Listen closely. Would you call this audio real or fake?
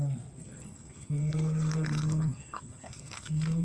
fake